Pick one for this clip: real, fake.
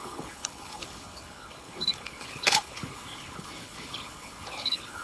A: fake